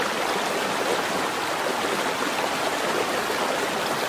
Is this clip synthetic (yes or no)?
no